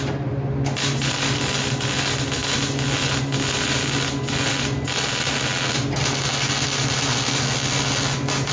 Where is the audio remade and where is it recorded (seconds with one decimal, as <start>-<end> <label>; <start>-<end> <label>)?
0.0-8.5 recorded